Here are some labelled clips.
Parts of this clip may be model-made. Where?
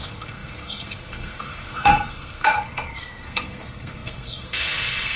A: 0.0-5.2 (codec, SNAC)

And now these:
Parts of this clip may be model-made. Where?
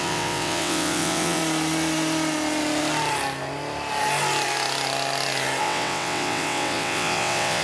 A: 0.0-1.4 (vocoder, WaveNeXt); 5.6-7.6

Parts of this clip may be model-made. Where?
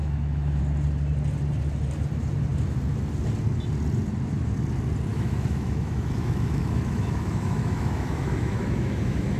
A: 0.0-0.6 (autoencoder, DAC-VAE); 5.1-9.4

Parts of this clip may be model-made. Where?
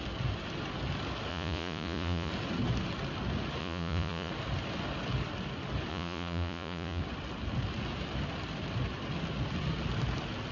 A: 1.3-2.3 (vocoder, Vocos); 3.6-4.3; 5.9-7.0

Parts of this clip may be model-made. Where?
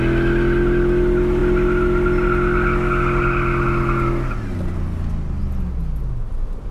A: none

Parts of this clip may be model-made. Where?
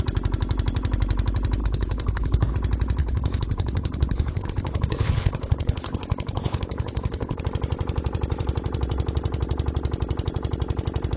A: 1.6-2.5 (codec, HILCodec); 3.0-7.4